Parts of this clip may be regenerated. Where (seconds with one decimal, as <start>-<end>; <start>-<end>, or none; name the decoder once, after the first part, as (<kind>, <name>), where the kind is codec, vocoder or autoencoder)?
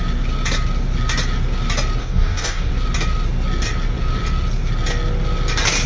2.0-2.7 (codec, DAC)